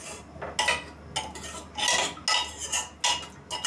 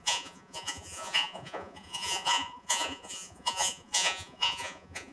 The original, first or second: first